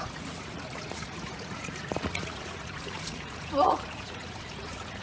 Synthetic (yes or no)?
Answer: yes